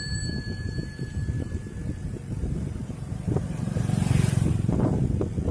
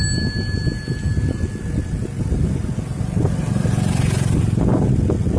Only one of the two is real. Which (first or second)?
second